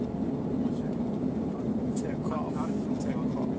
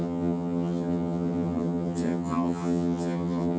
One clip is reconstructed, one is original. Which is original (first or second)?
first